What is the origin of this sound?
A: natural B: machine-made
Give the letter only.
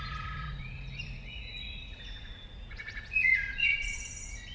B